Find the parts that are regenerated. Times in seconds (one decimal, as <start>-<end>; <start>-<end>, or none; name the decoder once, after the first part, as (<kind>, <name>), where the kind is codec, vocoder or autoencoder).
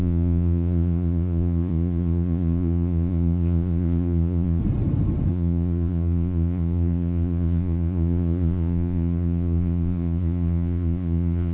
0.0-4.6 (vocoder, Vocos); 5.3-11.5